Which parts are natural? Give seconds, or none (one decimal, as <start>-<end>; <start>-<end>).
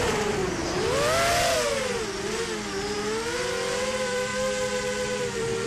0.4-3.8; 4.3-5.2